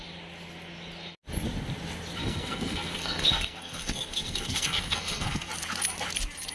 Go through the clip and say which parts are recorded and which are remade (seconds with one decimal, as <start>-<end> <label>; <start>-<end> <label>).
0.0-2.2 recorded; 2.2-5.5 remade; 5.5-6.5 recorded